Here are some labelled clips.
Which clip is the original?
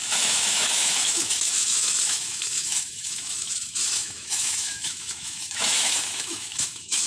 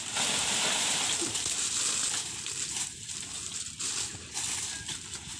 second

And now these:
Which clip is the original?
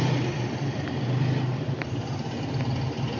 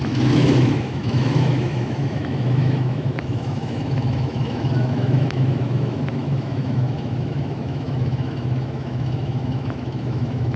first